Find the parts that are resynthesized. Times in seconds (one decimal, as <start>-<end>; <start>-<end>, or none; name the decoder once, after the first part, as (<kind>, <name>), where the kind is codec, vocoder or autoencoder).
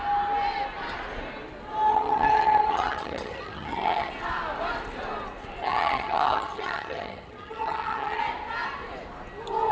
1.9-4.1 (vocoder, HiFi-GAN); 5.6-8.2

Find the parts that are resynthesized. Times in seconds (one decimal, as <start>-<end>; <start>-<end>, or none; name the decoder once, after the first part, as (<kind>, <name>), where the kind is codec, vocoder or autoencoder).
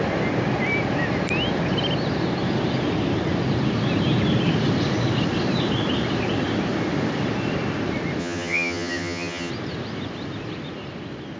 8.2-9.5 (vocoder, HiFi-GAN)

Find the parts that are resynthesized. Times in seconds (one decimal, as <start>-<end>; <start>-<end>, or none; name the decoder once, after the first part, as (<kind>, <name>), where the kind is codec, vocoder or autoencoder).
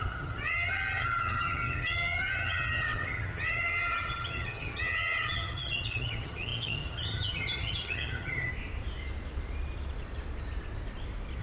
0.0-8.5 (vocoder, HiFi-GAN)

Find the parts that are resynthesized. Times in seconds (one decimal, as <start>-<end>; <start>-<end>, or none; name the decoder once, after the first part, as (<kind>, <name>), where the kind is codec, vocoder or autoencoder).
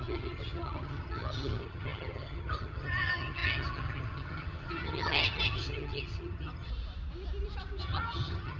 0.0-6.7 (vocoder, HiFi-GAN); 7.8-8.6